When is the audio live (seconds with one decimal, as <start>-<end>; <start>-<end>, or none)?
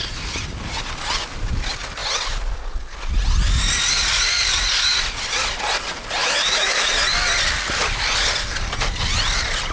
0.0-6.2; 6.9-9.7